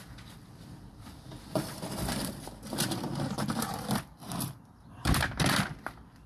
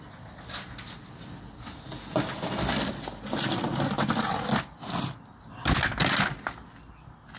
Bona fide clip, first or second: second